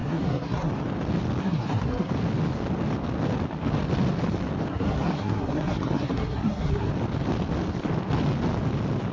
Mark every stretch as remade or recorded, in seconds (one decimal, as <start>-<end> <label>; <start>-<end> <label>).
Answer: 0.0-0.7 remade; 0.7-1.4 recorded; 1.4-2.1 remade; 2.1-4.7 recorded; 4.7-6.9 remade; 6.9-9.1 recorded